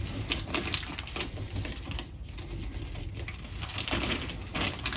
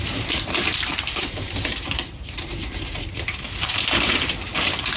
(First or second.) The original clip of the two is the first